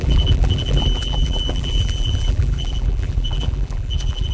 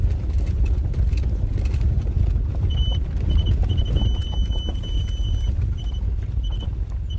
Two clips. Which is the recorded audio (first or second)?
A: second